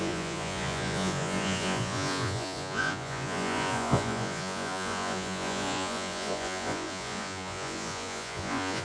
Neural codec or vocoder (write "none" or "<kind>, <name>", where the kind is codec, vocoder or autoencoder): vocoder, Vocos